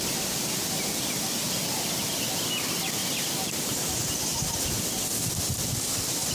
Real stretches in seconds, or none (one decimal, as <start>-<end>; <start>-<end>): 0.0-6.3